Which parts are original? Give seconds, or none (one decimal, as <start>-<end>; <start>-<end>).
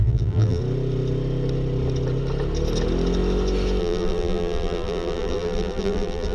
0.6-3.8